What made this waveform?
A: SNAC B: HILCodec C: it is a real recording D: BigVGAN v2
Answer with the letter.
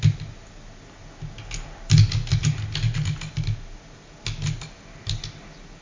C